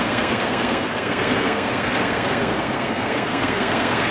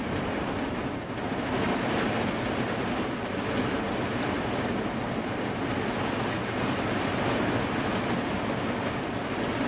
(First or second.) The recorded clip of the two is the second